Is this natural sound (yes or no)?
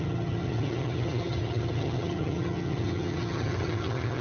no